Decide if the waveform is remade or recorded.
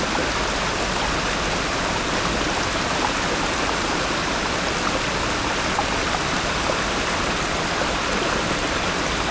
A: recorded